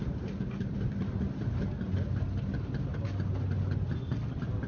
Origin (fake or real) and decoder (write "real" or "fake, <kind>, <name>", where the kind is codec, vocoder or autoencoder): real